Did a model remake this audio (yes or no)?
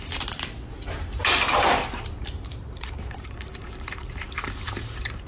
yes